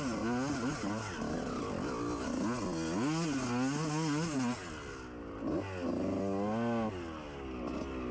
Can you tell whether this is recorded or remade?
recorded